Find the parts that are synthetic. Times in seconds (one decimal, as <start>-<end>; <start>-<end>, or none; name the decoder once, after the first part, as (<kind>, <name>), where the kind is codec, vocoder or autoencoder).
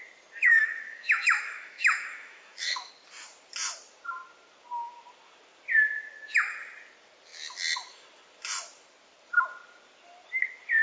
0.5-2.9 (autoencoder, DAC-VAE)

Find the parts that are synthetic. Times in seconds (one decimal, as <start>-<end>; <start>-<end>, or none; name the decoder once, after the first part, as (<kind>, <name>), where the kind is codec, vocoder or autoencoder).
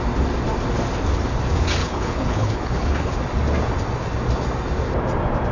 1.8-3.1 (codec, HILCodec)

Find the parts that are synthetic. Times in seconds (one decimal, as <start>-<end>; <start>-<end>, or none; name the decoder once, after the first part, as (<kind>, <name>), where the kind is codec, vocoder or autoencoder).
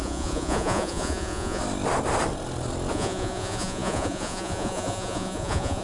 0.0-1.6 (vocoder, Vocos); 2.9-5.8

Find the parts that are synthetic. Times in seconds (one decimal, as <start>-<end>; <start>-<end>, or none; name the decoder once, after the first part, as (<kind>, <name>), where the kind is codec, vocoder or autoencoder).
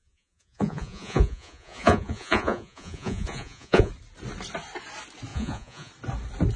0.0-3.9 (vocoder, Vocos); 5.3-5.9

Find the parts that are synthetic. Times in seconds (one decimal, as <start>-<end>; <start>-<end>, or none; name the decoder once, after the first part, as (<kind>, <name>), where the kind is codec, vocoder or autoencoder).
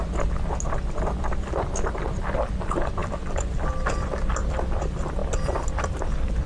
none